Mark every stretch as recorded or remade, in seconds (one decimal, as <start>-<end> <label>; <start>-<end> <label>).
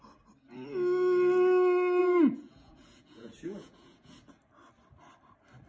0.0-2.0 recorded; 2.0-4.1 remade; 4.1-5.7 recorded